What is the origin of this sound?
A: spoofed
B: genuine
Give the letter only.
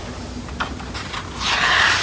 B